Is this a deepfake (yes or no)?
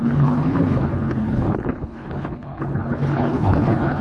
yes